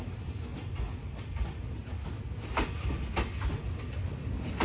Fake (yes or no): no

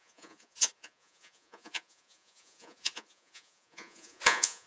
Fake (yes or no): yes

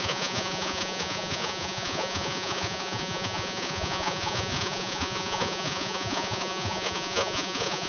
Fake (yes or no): yes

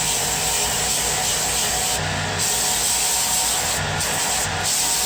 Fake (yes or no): no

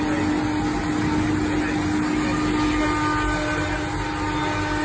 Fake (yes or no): no